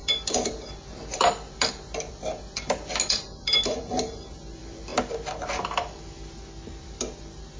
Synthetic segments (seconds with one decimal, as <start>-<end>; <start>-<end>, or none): 0.0-4.9; 6.8-7.6